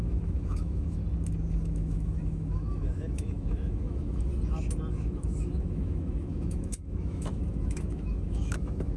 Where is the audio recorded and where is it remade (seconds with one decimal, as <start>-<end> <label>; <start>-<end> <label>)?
0.0-1.0 remade; 1.0-1.5 recorded; 1.5-4.3 remade; 4.3-4.9 recorded; 4.9-9.0 remade